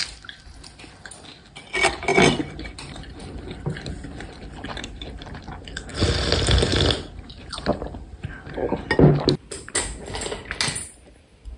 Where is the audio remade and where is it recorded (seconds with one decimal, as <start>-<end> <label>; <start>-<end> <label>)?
0.0-2.1 recorded; 2.1-5.4 remade; 5.4-7.7 recorded; 7.7-8.3 remade; 8.3-11.6 recorded